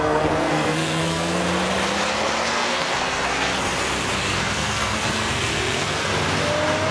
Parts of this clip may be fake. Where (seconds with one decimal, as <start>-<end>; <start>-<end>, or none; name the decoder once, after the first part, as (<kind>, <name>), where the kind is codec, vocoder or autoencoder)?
0.0-1.4 (codec, SNAC); 2.5-3.5; 4.3-6.1